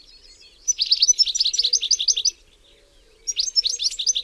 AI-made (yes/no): no